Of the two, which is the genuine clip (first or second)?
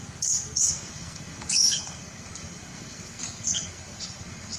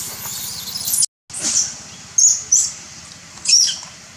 second